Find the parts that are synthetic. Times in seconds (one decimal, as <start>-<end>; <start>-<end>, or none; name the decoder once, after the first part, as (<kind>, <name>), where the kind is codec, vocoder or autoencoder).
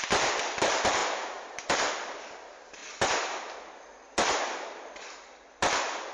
0.0-2.8 (vocoder, BigVGAN v2); 5.3-6.1